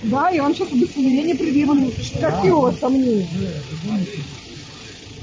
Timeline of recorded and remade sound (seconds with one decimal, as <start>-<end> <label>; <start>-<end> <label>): 0.0-0.5 recorded; 0.5-1.8 remade; 1.8-5.2 recorded